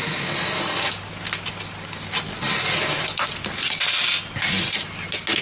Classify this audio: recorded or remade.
recorded